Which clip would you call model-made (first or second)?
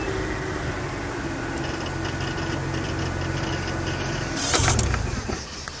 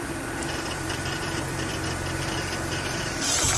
second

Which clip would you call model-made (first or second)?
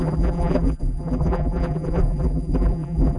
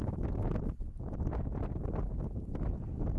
first